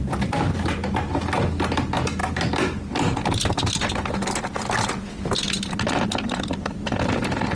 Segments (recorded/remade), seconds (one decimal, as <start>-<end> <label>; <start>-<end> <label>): 0.0-7.6 recorded